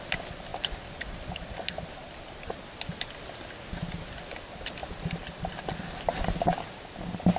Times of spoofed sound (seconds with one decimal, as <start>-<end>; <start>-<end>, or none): 0.5-1.0; 4.8-6.0